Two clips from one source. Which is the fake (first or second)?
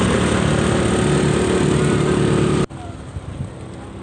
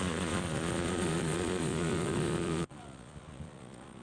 second